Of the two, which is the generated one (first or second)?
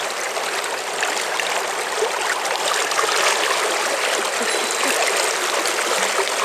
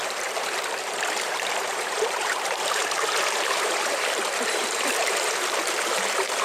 second